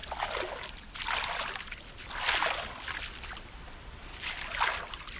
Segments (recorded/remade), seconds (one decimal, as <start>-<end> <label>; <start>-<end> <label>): 0.0-5.2 recorded